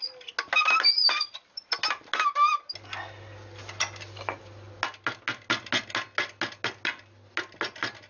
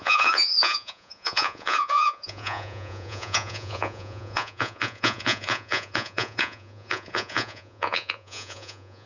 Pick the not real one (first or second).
second